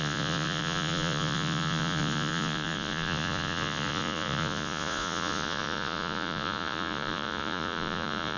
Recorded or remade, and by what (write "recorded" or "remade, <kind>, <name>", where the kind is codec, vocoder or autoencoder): remade, vocoder, Vocos